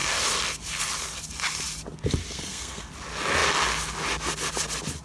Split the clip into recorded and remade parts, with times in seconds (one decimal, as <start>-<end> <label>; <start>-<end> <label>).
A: 0.0-2.2 recorded; 2.2-2.9 remade; 2.9-5.0 recorded